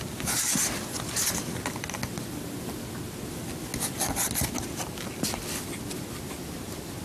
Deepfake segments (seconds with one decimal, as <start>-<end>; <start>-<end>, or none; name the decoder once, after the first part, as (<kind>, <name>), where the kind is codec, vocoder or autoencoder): none